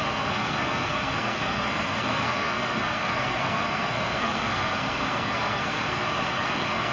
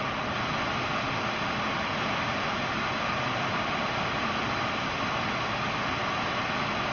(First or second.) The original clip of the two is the second